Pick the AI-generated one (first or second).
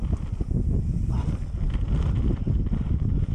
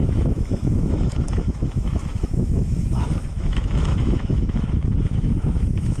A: second